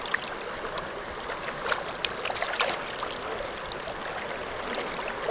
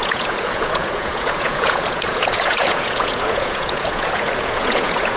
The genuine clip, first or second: first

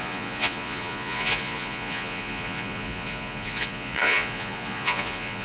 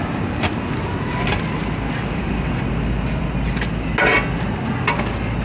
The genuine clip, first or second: second